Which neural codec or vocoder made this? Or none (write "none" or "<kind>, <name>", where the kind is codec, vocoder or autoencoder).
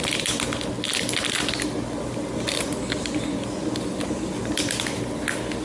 none